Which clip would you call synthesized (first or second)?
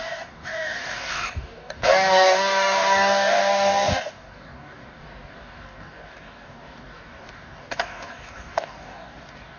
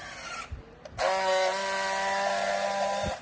first